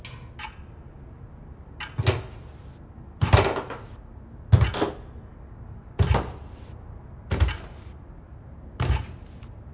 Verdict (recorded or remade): recorded